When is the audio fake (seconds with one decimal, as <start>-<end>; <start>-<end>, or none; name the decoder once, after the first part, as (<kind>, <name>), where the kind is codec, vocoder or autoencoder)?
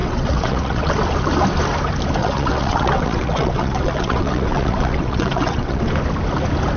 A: 0.0-0.9 (vocoder, WaveNeXt); 2.2-5.8